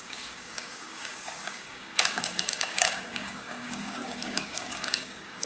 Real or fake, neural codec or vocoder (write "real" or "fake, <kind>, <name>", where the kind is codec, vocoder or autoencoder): fake, codec, DAC